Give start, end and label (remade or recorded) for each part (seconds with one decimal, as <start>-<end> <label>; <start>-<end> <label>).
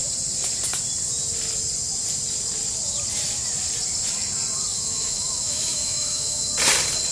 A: 0.0-4.7 recorded; 4.7-6.5 remade; 6.5-7.1 recorded